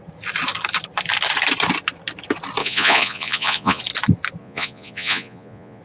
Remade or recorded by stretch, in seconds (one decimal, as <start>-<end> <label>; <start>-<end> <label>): 0.0-2.6 recorded; 2.6-3.8 remade; 3.8-4.4 recorded; 4.4-5.8 remade